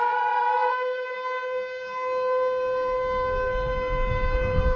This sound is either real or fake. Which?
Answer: fake